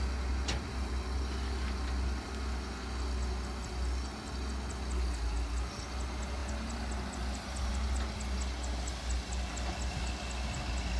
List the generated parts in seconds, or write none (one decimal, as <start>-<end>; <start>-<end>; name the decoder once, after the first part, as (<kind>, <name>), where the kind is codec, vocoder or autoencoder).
none